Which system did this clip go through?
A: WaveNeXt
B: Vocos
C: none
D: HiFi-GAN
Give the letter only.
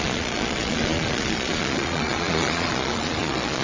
B